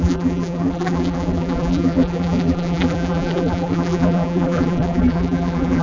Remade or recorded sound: remade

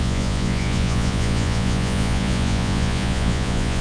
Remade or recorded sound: remade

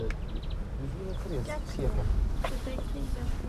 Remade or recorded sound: recorded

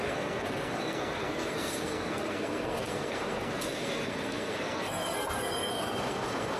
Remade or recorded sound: remade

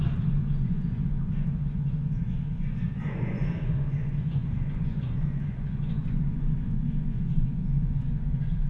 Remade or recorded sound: remade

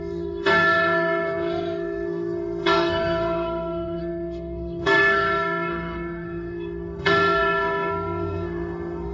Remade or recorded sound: remade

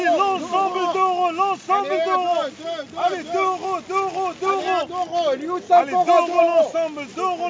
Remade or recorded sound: recorded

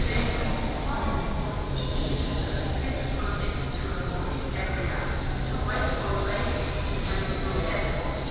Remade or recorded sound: recorded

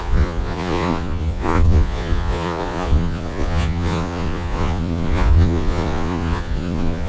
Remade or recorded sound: remade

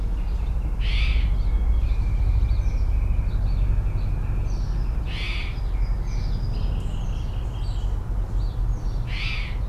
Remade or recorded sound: recorded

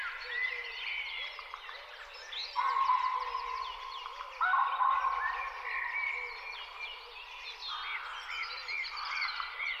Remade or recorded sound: recorded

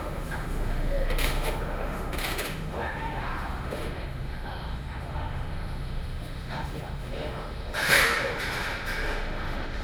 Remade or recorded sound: remade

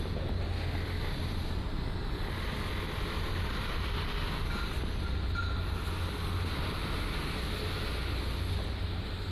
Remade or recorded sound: recorded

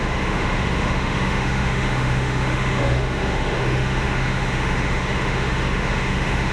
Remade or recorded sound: remade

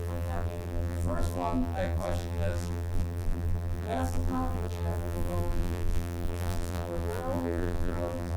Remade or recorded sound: remade